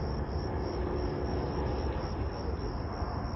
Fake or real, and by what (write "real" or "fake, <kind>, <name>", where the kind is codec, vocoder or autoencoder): real